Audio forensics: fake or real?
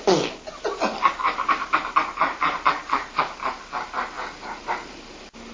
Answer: real